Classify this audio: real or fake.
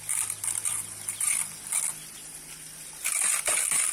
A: real